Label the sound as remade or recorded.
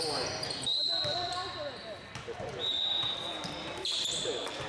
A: recorded